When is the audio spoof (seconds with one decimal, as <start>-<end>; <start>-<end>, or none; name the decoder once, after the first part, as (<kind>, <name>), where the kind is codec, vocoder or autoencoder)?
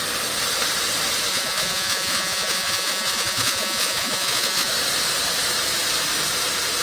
1.3-4.7 (vocoder, Vocos)